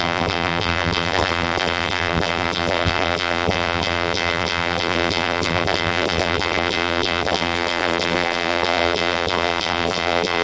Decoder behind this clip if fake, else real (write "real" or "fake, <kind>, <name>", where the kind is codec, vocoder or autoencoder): fake, vocoder, BigVGAN v2